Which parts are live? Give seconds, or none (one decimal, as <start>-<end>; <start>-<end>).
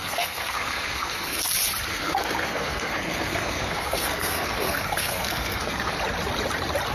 1.4-1.9; 6.0-6.9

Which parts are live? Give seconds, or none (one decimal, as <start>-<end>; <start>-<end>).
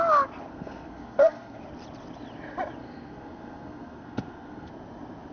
0.0-0.5; 1.6-2.8; 4.7-5.3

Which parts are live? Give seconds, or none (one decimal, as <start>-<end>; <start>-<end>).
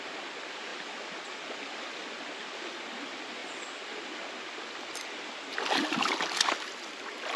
0.0-0.7; 2.0-7.4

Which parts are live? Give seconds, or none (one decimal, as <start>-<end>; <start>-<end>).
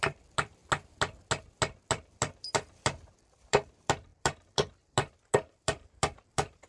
0.6-1.9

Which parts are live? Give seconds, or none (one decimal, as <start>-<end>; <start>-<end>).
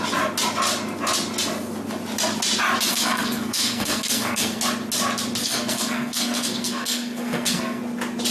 0.0-2.9; 4.6-5.4; 7.8-8.3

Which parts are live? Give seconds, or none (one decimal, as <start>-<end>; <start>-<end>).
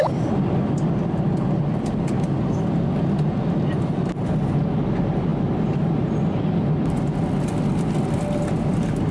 0.0-9.1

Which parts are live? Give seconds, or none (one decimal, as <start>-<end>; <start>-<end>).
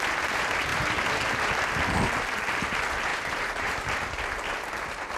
0.0-3.1; 3.8-5.2